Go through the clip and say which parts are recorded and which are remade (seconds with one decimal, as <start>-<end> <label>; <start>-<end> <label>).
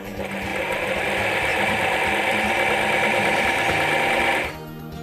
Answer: 0.0-0.5 recorded; 0.5-1.0 remade; 1.0-1.5 recorded; 1.5-4.5 remade; 4.5-5.0 recorded